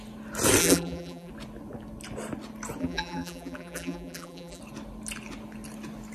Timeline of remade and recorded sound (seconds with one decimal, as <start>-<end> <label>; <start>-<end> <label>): 0.0-0.6 recorded; 0.6-1.3 remade; 1.3-2.8 recorded; 2.8-4.6 remade; 4.6-6.1 recorded